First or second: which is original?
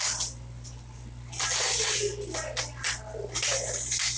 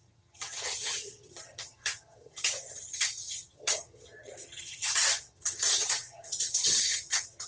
first